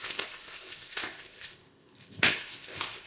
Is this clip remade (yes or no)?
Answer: yes